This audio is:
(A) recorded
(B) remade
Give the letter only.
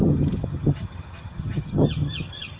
B